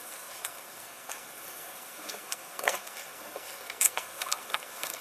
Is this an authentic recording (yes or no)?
no